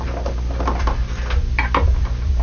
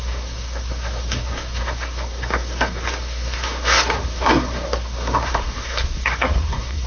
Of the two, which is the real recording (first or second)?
first